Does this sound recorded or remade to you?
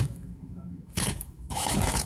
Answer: remade